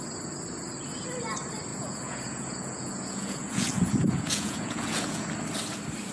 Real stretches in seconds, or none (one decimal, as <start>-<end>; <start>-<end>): 0.0-1.7; 5.3-6.1

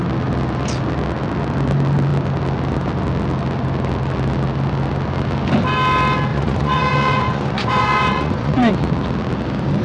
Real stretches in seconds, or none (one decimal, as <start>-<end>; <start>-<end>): 0.0-6.3; 8.7-9.8

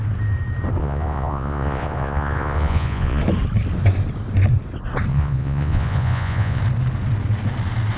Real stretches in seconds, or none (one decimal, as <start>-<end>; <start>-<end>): 0.0-0.8; 3.2-5.1; 6.6-8.0

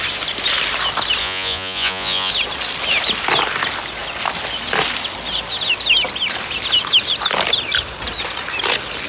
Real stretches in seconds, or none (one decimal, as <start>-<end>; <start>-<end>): 0.0-1.2; 2.3-9.1